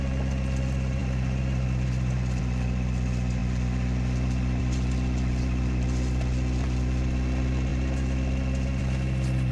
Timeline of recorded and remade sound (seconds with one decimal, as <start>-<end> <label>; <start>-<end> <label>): 0.0-9.5 recorded